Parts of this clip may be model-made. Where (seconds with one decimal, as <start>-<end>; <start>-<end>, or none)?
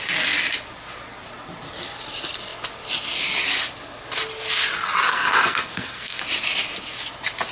5.1-6.2